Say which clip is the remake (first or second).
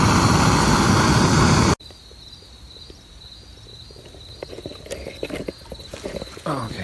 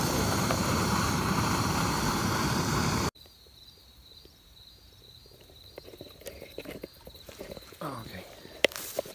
second